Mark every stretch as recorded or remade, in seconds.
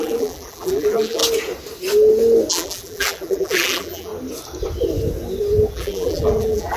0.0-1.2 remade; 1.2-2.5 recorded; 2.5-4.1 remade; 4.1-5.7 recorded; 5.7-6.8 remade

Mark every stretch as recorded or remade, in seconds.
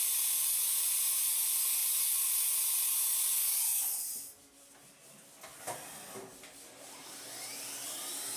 0.0-8.4 recorded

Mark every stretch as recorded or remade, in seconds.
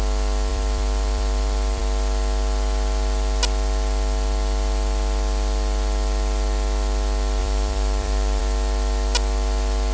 0.0-0.5 recorded; 0.5-1.8 remade; 1.8-7.4 recorded; 7.4-8.4 remade; 8.4-9.9 recorded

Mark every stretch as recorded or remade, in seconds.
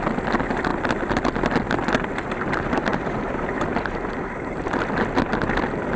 0.0-2.9 recorded; 2.9-4.7 remade; 4.7-6.0 recorded